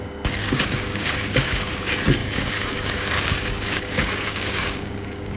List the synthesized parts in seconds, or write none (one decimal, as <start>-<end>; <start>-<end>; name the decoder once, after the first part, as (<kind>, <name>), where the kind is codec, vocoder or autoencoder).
0.4-1.8 (codec, DAC); 2.2-5.4